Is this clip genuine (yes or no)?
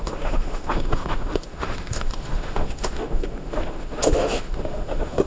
no